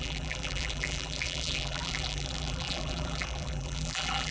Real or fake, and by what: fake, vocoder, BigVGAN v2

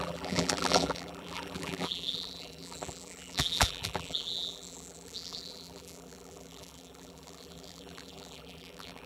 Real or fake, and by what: fake, vocoder, BigVGAN v2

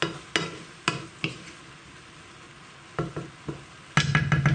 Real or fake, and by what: real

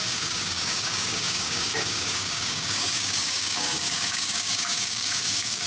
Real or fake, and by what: fake, codec, DAC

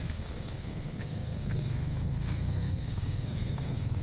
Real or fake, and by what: fake, codec, SNAC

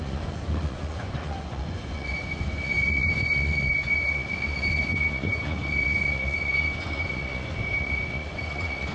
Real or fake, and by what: fake, vocoder, Vocos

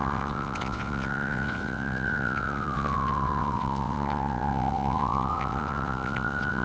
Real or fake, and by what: fake, vocoder, WaveNeXt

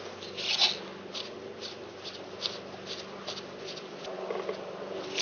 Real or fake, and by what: real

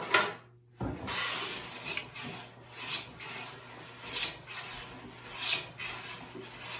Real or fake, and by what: real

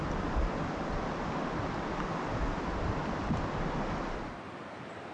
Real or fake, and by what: real